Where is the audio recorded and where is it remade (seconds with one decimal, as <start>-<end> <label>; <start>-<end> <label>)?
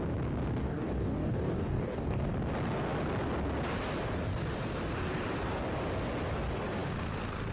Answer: 0.0-0.6 recorded; 0.6-2.3 remade; 2.3-7.5 recorded